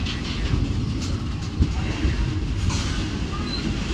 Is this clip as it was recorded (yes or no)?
yes